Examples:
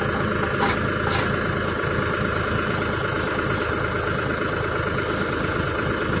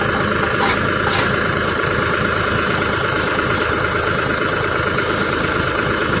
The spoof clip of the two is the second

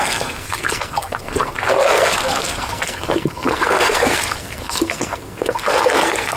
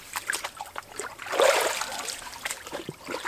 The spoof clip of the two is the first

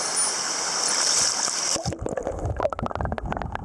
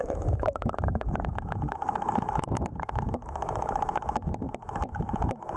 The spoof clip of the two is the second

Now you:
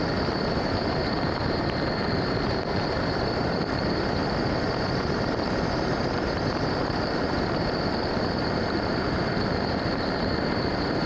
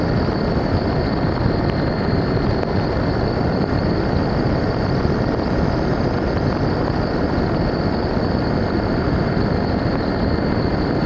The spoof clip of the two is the first